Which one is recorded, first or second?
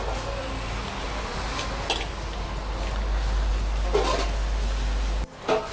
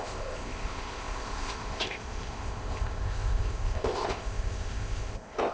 first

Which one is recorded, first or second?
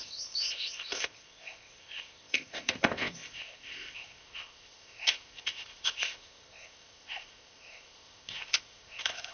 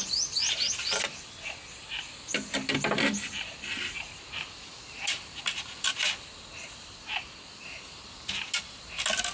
second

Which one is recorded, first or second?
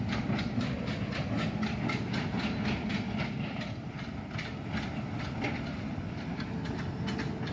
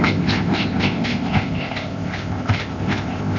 first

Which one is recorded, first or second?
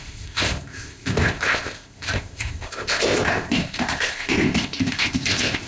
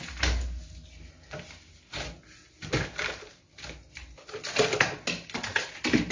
second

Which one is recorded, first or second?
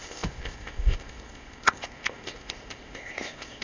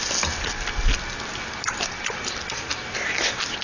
second